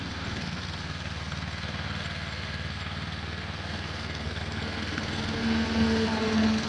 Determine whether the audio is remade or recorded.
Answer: remade